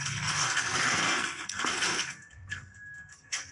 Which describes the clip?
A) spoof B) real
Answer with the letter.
A